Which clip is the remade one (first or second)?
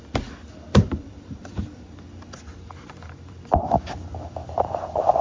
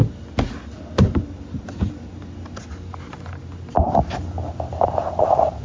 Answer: first